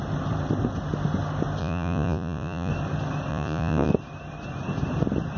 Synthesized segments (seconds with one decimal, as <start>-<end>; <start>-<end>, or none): 1.6-2.7; 3.3-3.9